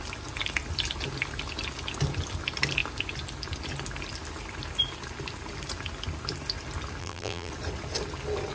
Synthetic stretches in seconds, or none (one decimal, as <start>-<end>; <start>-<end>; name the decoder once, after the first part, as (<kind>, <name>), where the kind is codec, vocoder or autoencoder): 7.0-7.5 (vocoder, BigVGAN v2)